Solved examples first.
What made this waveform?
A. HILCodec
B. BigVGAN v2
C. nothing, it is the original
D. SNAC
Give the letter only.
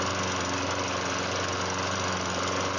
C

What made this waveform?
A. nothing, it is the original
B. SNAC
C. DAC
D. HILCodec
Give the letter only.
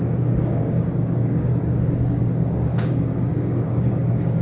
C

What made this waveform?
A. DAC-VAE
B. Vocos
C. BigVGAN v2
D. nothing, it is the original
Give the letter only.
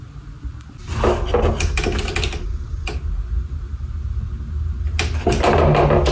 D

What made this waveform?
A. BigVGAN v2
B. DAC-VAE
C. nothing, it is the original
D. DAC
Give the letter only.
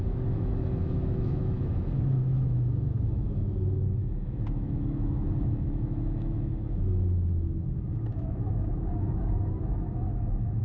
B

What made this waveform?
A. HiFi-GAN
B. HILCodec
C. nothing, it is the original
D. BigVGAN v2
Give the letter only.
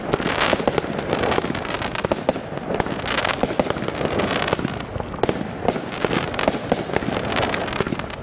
C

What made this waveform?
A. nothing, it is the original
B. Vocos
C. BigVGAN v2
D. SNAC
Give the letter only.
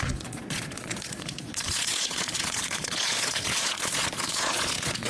B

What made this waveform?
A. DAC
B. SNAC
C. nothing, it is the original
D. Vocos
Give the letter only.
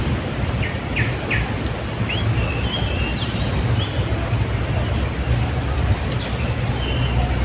C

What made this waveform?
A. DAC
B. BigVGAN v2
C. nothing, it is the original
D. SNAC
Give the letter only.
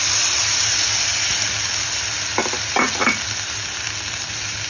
C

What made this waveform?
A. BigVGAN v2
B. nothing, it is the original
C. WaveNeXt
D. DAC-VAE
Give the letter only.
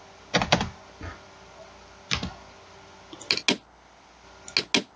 B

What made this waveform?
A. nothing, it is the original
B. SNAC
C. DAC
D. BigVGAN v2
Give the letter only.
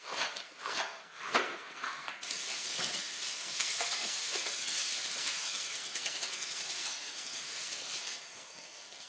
B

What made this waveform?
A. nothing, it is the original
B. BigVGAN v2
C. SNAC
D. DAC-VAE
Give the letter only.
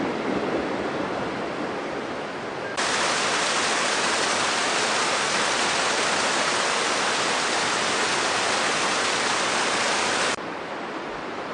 A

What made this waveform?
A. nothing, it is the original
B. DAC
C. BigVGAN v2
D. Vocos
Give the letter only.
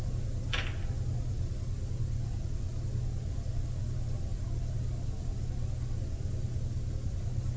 A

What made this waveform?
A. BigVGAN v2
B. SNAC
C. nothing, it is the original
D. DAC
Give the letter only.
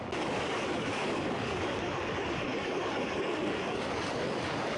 D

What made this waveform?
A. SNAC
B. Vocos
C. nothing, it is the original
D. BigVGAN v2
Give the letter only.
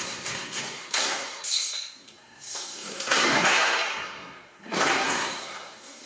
A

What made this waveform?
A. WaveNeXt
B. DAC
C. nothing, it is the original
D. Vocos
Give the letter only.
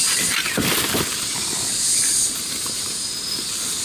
C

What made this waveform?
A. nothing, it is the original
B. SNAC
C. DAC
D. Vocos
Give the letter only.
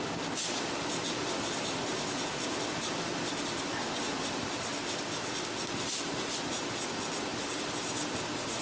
A